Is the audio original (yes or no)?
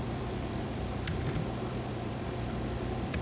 no